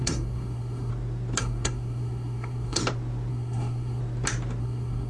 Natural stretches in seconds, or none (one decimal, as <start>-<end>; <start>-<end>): 0.9-1.4; 2.8-3.3; 4.0-4.6

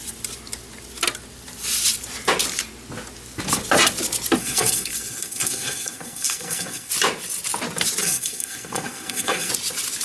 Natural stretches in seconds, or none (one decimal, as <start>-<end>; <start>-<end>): 0.0-4.4; 6.9-8.0; 9.5-10.0

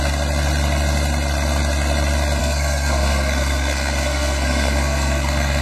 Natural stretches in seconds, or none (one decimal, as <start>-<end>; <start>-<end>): 0.0-2.4

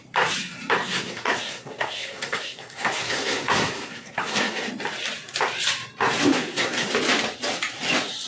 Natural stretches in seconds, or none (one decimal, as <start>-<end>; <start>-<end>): 0.0-0.8; 4.7-6.3; 6.9-8.3

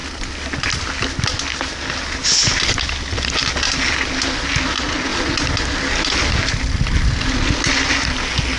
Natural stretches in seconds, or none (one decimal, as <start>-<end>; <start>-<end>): 0.0-8.6

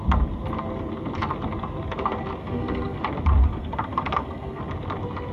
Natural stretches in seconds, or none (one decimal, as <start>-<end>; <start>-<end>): 0.0-2.4; 3.0-3.4; 4.6-5.3

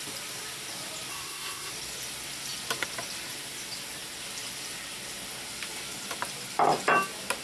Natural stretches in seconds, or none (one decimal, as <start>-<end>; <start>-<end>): 0.0-1.1; 1.7-7.4

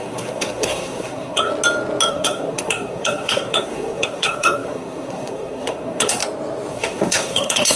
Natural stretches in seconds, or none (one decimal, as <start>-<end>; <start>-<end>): 1.5-2.1; 6.2-6.7